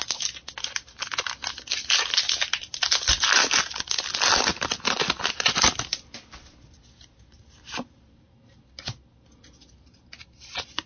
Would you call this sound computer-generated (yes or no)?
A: no